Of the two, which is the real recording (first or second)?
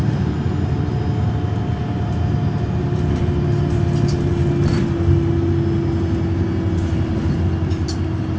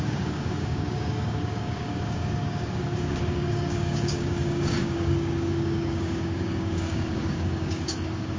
first